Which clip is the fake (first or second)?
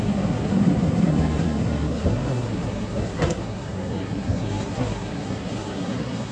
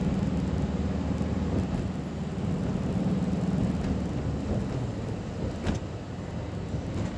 first